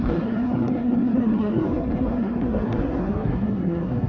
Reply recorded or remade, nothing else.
remade